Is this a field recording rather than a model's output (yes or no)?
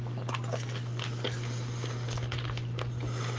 yes